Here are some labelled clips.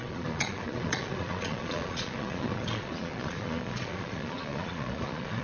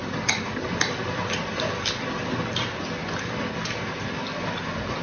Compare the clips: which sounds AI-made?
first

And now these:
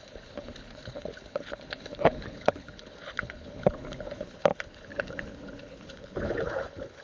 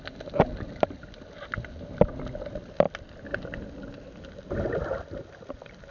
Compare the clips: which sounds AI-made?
first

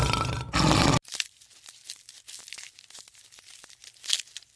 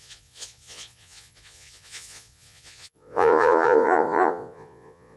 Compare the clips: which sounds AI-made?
second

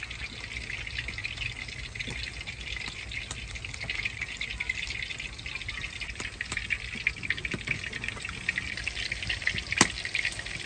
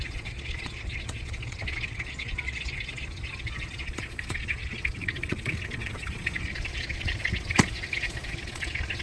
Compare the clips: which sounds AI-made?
second